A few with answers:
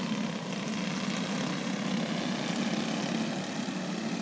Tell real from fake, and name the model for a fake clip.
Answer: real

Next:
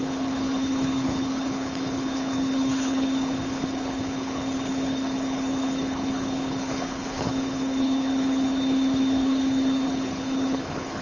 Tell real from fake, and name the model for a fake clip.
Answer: fake, codec, HILCodec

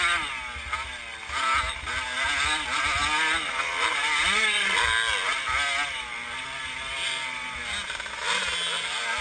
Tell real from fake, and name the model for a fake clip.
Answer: real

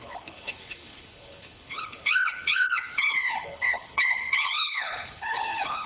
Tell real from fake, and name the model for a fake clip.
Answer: fake, codec, HILCodec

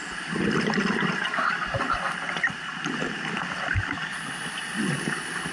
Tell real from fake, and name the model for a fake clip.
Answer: real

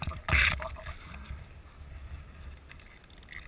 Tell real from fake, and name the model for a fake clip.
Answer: real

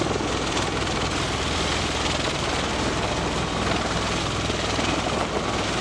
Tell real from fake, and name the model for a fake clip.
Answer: real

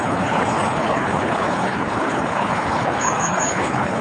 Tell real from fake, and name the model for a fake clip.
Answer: fake, codec, HILCodec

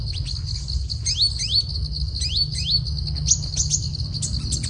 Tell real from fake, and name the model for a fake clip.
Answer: real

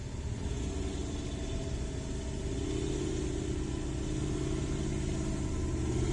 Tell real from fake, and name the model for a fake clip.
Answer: real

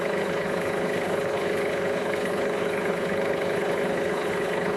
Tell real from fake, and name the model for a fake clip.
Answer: fake, codec, HILCodec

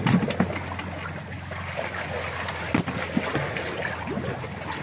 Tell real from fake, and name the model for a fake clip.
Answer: real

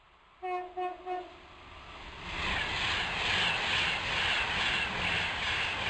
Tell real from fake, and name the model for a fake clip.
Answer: real